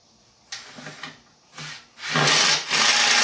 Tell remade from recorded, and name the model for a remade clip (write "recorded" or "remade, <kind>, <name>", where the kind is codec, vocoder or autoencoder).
recorded